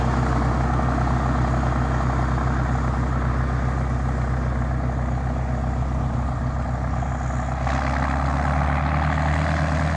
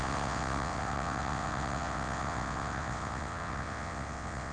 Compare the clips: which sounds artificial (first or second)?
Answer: second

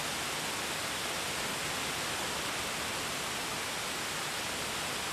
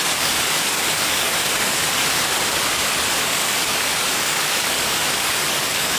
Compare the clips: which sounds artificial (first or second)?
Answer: second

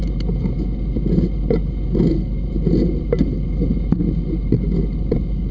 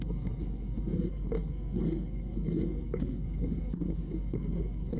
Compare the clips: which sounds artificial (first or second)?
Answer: second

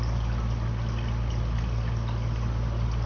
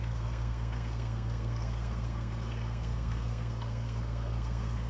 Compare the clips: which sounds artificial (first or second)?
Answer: second